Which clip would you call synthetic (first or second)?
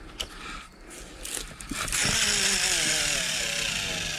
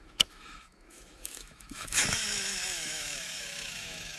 second